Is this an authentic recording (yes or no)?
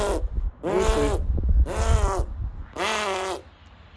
yes